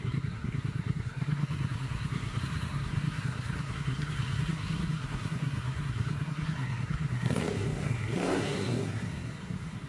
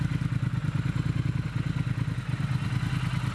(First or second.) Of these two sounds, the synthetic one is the first